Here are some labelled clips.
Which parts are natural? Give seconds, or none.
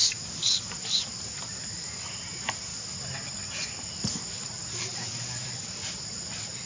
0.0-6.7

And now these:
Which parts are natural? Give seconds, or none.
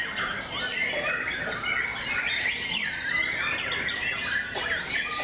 0.0-5.2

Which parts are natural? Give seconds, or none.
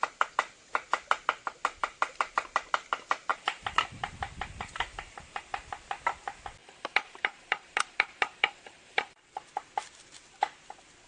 0.0-1.8; 2.3-3.3; 5.4-6.6; 9.5-11.1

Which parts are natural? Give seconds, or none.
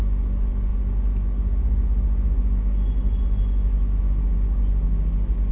0.0-5.5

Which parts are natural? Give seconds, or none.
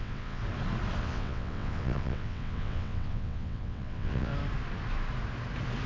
0.4-1.0; 4.3-5.9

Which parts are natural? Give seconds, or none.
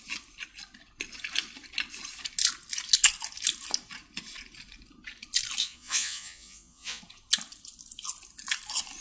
0.0-5.6; 7.0-9.0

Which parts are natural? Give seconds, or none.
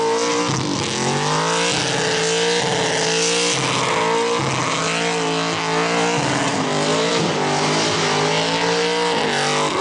0.0-6.5; 7.1-9.8